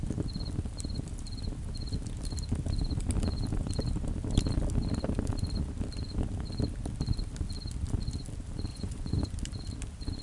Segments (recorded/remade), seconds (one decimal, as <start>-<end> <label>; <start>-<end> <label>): 0.0-8.7 recorded; 8.7-9.3 remade; 9.3-10.2 recorded